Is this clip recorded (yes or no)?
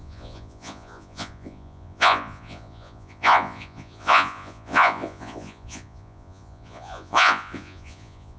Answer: no